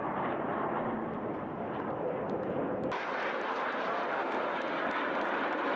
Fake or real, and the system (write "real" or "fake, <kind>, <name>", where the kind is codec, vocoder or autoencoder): fake, vocoder, BigVGAN v2